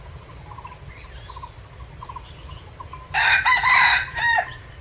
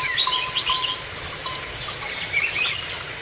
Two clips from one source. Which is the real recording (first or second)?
first